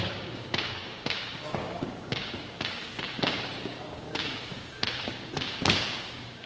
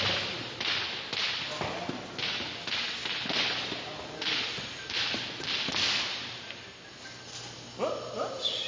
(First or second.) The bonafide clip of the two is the second